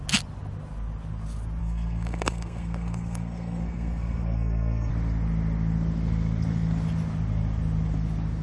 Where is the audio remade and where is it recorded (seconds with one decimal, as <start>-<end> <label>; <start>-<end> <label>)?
0.0-1.6 recorded; 1.6-4.9 remade; 4.9-8.4 recorded